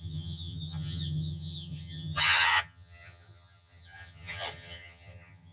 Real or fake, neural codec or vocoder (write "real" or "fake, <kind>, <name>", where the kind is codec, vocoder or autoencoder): fake, vocoder, HiFi-GAN